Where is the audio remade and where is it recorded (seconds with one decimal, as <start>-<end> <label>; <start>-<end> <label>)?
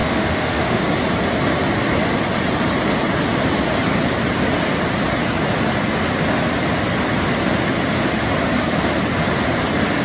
0.0-0.8 remade; 0.8-10.0 recorded